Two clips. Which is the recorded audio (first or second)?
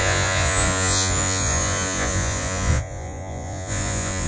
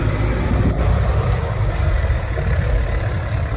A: second